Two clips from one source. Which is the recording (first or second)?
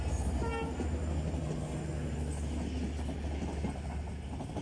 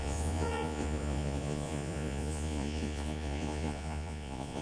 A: first